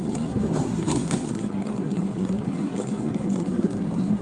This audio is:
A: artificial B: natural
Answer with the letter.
A